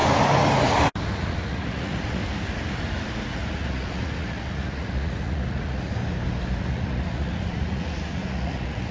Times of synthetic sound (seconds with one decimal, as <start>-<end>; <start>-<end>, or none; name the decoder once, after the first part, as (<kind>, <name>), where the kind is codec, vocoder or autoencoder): 1.2-2.2 (vocoder, Vocos); 3.3-6.0; 6.6-8.9